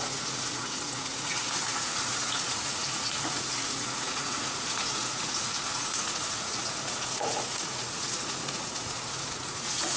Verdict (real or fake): fake